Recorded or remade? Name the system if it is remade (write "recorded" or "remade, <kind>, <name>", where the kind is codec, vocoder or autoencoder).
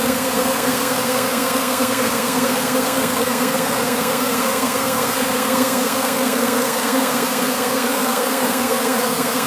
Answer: remade, codec, SNAC